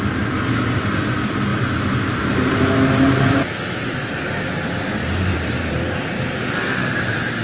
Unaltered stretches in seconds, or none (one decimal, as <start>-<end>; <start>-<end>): 0.0-1.5; 2.6-5.3; 5.9-7.4